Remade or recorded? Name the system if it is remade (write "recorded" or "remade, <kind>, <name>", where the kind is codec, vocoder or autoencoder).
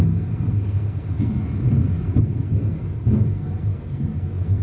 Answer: remade, codec, SNAC